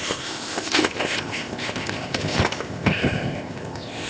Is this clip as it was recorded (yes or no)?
no